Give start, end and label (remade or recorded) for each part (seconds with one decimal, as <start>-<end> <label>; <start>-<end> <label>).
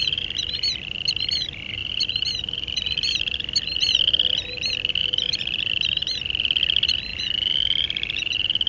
0.0-8.7 recorded